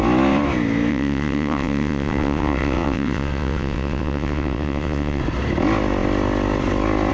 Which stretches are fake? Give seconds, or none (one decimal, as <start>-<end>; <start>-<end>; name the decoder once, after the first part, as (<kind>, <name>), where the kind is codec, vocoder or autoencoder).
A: 0.9-5.2 (vocoder, WaveNeXt)